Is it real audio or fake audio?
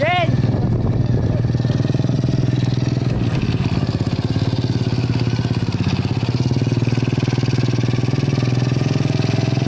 real